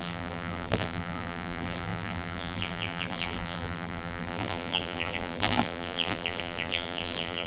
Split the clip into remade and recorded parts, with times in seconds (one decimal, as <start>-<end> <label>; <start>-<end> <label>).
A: 0.0-7.5 remade